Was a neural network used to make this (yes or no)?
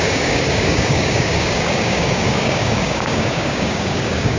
yes